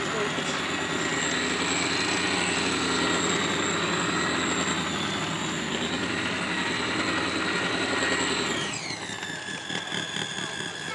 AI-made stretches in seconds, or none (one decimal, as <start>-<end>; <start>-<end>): none